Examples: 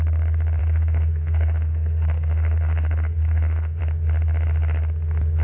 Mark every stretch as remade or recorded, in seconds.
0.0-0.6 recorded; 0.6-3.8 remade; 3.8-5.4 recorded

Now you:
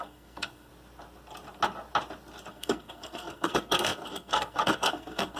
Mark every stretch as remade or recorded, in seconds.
0.0-0.7 remade; 0.7-2.5 recorded; 2.5-5.4 remade